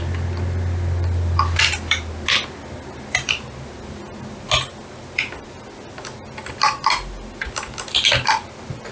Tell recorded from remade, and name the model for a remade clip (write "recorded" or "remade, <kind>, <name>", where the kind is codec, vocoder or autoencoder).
recorded